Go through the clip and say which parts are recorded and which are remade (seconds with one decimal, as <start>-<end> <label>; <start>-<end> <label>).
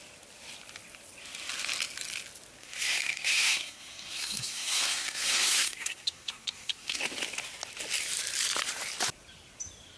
0.0-2.6 recorded; 2.6-7.0 remade; 7.0-10.0 recorded